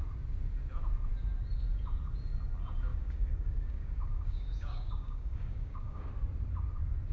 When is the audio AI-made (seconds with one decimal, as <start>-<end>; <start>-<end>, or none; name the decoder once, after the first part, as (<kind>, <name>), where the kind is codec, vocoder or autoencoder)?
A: 2.9-6.1 (codec, DAC)